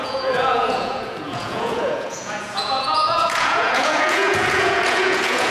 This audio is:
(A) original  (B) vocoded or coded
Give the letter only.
B